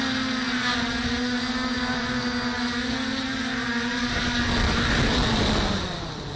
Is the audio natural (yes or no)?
yes